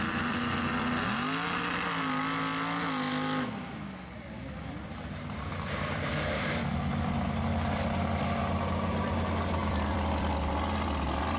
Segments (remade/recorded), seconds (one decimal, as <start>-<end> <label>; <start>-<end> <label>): 0.0-5.5 recorded; 5.5-6.4 remade; 6.4-9.6 recorded; 9.6-10.3 remade; 10.3-11.4 recorded